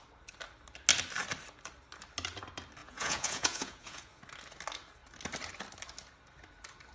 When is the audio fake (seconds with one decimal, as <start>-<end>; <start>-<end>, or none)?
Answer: 2.8-4.2